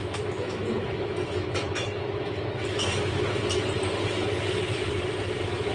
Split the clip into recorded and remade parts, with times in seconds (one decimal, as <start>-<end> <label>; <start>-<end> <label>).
0.0-3.4 remade; 3.4-5.7 recorded